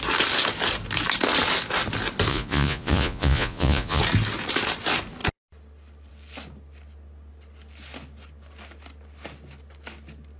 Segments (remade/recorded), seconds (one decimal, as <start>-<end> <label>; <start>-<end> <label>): 0.0-2.3 recorded; 2.3-4.0 remade; 4.0-10.4 recorded